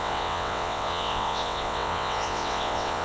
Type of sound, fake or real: fake